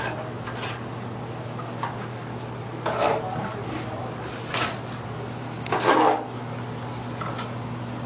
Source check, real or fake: real